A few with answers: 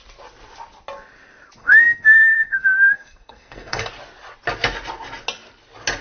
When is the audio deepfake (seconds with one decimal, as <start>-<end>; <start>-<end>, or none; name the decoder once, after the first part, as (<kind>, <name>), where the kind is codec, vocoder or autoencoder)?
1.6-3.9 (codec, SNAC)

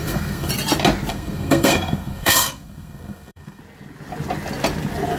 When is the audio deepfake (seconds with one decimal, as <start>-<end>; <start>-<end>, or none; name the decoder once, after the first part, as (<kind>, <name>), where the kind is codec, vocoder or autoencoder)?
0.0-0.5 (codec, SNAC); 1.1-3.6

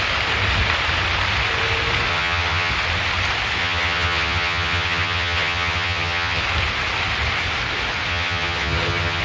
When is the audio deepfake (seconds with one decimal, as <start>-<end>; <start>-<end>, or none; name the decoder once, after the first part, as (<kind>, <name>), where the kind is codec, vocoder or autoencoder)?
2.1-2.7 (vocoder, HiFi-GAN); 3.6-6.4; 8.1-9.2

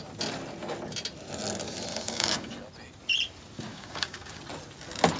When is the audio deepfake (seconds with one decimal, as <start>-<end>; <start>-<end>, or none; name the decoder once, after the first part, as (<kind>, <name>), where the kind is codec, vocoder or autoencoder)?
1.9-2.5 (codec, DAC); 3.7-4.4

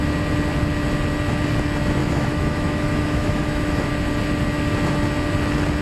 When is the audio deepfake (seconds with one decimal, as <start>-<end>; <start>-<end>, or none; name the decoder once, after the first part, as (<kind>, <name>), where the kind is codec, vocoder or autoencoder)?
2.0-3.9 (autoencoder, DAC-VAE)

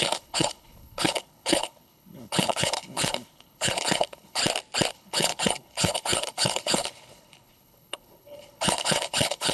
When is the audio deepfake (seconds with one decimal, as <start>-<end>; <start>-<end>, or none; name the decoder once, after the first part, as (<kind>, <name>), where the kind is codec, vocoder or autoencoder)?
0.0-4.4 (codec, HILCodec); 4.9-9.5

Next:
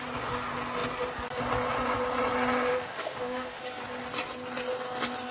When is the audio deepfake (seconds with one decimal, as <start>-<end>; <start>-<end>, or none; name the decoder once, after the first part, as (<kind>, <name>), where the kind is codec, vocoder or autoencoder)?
2.7-3.6 (autoencoder, DAC-VAE)